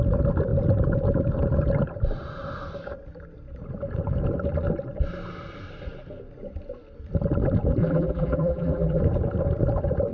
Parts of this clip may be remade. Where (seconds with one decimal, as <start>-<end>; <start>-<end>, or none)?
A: 7.8-9.0

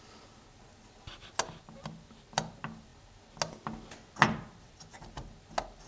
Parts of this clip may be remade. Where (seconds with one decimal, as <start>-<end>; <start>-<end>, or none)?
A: none

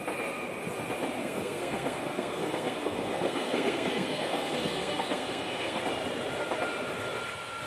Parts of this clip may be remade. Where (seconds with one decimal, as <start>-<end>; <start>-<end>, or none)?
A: 1.2-5.8

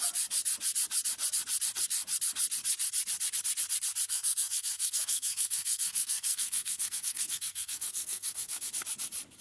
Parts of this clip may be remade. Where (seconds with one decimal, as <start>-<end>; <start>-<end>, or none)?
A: 4.1-8.7